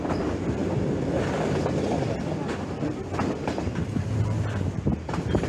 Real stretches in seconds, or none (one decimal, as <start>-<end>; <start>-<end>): none